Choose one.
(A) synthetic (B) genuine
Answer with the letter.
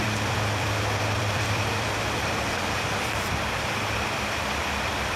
A